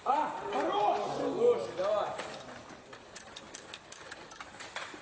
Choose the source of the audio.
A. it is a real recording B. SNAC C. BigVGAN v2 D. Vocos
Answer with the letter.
A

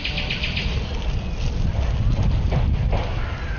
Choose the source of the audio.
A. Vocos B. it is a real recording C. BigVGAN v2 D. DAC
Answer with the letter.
B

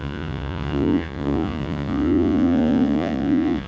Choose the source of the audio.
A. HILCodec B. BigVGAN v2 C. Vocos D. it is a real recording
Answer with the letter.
C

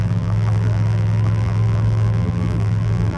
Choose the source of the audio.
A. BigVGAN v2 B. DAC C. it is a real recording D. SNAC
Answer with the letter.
A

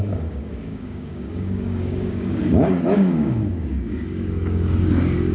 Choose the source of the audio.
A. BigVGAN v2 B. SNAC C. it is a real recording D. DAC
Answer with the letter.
D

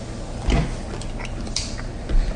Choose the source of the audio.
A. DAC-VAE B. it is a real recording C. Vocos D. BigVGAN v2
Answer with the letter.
B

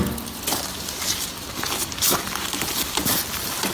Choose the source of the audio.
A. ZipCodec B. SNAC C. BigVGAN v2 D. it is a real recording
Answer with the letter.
D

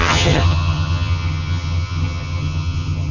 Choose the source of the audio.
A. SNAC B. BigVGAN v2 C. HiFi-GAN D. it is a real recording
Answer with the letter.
C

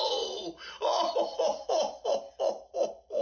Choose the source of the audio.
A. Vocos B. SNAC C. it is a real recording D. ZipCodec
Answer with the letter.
C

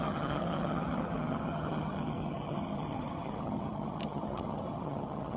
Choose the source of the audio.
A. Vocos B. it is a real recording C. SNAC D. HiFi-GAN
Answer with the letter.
D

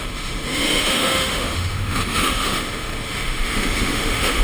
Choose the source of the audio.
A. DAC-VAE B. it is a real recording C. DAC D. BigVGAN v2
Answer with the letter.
A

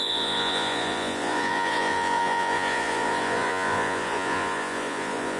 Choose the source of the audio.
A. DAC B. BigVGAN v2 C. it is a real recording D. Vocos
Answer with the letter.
D